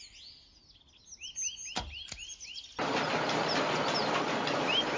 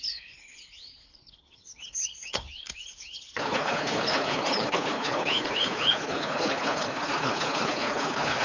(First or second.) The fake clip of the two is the second